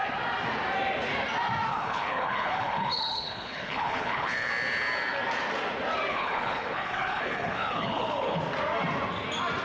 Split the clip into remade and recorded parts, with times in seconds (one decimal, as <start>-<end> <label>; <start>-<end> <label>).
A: 0.0-1.7 recorded; 1.7-4.5 remade; 4.5-6.1 recorded; 6.1-8.4 remade; 8.4-9.6 recorded